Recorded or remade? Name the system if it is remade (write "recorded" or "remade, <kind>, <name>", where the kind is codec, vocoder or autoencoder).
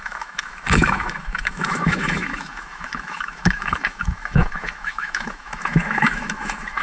remade, autoencoder, DAC-VAE